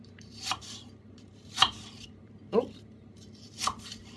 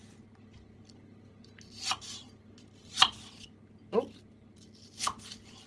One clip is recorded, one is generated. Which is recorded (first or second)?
second